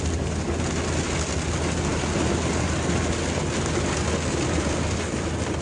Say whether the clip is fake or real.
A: real